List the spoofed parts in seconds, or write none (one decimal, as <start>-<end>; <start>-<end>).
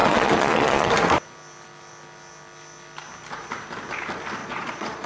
0.0-0.9; 4.4-5.1